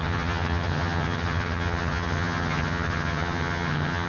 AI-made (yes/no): yes